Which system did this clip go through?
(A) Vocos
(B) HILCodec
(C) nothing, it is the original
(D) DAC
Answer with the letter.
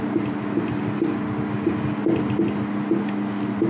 C